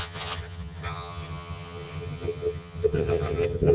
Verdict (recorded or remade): remade